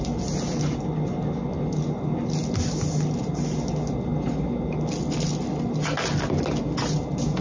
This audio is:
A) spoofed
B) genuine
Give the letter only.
B